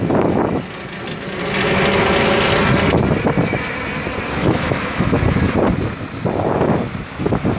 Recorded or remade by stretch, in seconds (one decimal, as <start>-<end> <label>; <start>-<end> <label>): 0.0-4.4 recorded; 4.4-5.2 remade; 5.2-7.6 recorded